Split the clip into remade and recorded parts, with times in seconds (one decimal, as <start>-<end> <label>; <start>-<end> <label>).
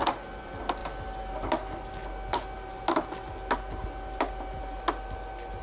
0.0-5.6 recorded